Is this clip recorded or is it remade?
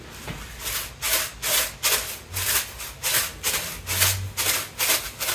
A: recorded